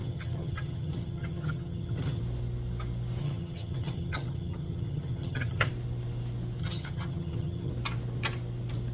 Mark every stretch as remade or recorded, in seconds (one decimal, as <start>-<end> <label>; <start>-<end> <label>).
0.0-2.2 remade; 2.2-3.2 recorded; 3.2-5.7 remade; 5.7-6.6 recorded; 6.6-7.7 remade; 7.7-8.9 recorded